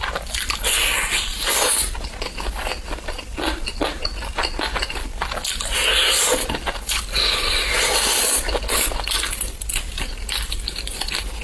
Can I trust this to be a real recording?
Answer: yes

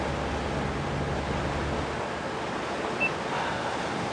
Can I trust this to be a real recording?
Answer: yes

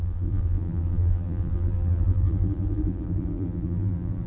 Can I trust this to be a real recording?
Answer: no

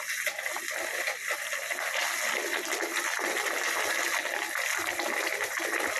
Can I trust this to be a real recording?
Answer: yes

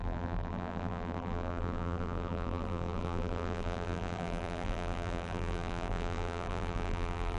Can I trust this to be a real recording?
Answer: no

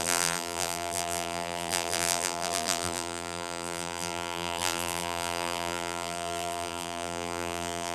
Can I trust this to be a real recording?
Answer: no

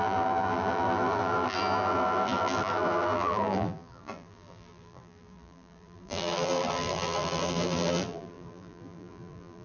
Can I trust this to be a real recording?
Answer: no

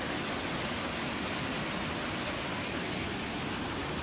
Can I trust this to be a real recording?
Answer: yes